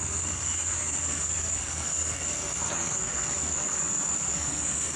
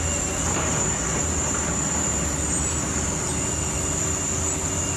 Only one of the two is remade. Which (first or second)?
first